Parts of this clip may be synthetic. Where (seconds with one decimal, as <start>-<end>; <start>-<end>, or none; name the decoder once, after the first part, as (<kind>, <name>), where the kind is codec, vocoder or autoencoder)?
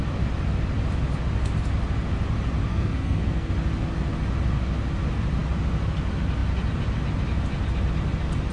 2.7-3.5 (codec, SNAC)